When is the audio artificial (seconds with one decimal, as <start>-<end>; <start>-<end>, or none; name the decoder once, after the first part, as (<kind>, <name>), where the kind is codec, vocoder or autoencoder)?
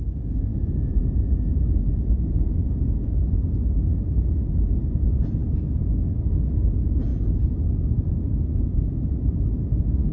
0.0-10.1 (vocoder, Vocos)